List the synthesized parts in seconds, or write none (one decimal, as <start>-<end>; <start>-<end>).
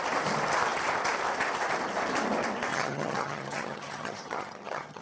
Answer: 2.7-5.0